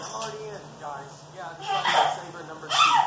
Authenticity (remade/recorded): recorded